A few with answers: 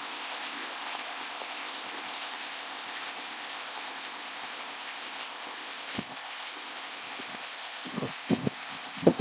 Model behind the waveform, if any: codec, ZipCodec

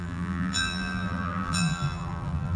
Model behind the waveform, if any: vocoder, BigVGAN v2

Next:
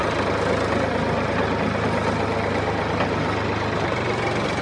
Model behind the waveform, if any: none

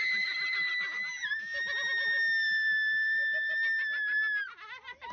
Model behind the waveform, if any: none